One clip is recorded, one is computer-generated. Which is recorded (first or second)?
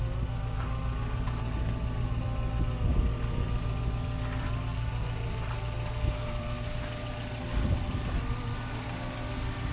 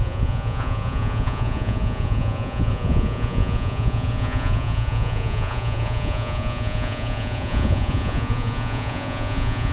first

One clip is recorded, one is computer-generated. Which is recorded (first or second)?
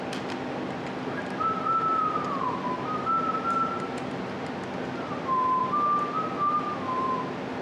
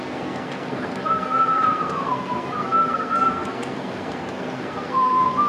first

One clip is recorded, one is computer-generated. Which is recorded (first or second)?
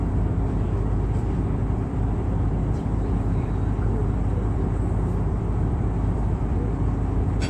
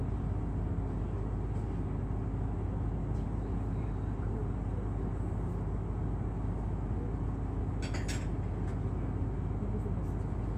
second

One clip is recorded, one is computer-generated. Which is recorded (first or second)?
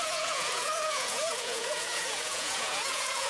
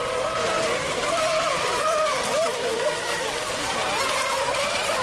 second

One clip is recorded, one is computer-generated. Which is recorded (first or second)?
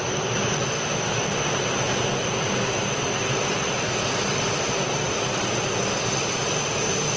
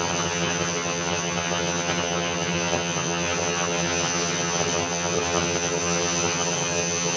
first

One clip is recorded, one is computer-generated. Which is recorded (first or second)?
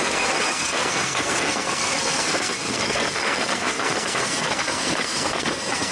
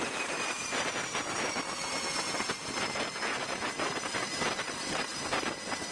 second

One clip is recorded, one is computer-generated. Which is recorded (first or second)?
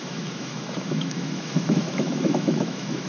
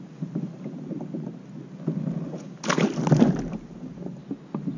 second